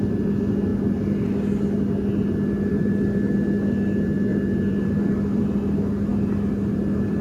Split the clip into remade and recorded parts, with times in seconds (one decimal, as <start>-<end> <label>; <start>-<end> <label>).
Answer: 0.0-4.3 recorded; 4.3-4.9 remade; 4.9-7.2 recorded